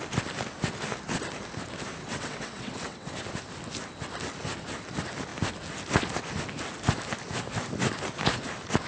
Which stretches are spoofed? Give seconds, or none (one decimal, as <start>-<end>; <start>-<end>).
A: 2.0-3.1